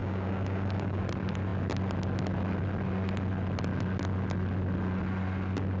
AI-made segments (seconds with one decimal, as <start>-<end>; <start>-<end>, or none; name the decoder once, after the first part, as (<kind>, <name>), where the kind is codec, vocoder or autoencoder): 0.0-1.0 (codec, DAC)